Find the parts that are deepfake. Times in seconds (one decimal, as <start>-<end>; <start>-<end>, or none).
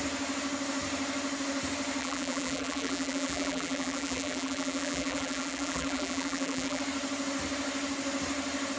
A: 2.0-6.8